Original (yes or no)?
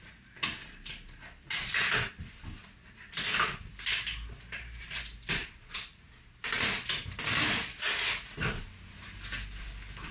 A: yes